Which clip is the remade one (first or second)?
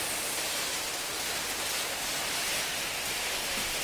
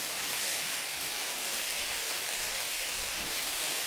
second